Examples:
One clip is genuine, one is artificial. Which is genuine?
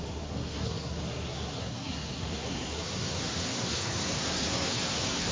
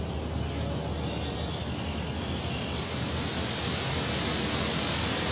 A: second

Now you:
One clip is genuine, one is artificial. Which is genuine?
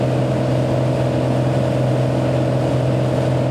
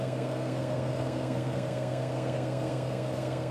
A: first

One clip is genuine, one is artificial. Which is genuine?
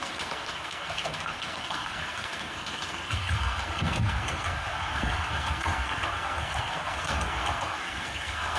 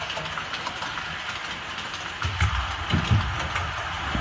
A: second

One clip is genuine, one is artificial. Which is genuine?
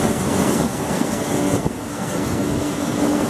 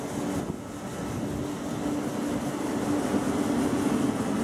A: second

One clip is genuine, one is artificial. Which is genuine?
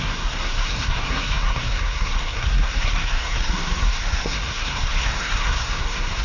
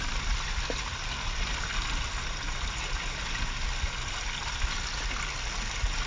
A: second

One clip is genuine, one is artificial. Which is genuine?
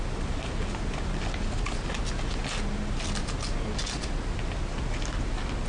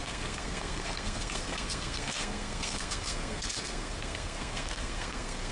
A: first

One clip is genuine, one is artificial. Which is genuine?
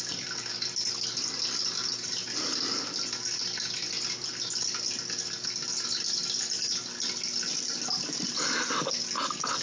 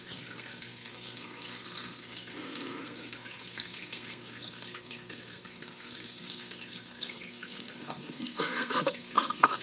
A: first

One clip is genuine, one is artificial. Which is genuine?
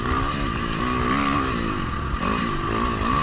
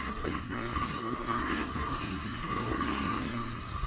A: first